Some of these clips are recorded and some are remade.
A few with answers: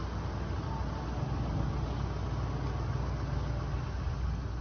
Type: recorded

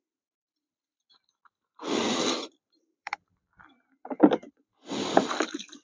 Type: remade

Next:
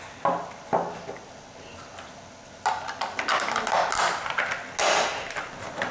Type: recorded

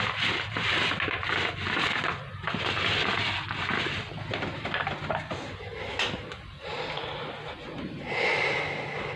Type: recorded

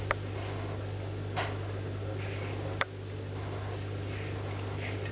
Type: recorded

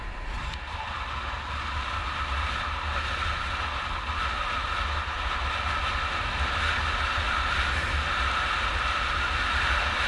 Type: recorded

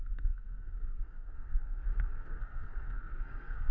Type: remade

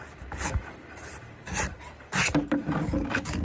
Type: recorded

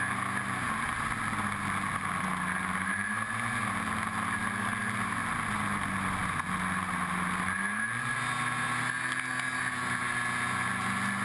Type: recorded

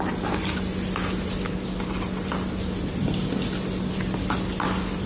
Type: recorded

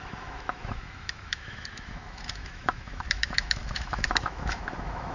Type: remade